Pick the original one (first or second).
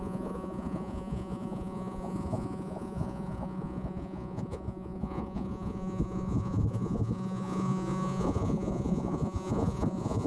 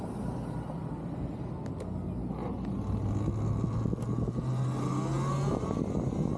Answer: second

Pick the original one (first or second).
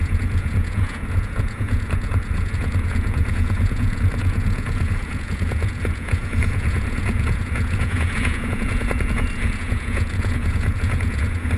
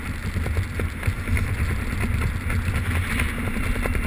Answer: second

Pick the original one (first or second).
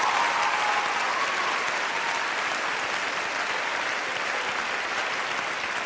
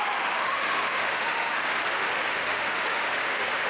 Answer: first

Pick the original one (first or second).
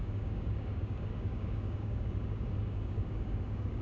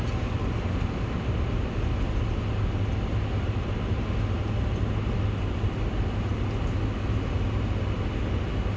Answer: second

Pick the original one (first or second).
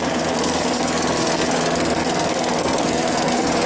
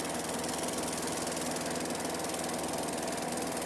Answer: second